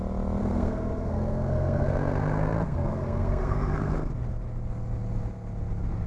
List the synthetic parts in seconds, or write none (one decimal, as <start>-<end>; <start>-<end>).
0.4-4.1